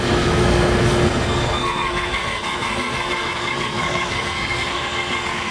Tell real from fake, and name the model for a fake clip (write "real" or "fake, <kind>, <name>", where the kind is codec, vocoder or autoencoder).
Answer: fake, codec, SNAC